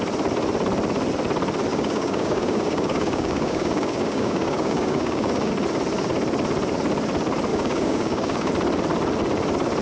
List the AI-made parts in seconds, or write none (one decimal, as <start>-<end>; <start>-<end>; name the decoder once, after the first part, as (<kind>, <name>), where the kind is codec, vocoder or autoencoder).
1.7-5.5 (codec, DAC); 7.5-8.5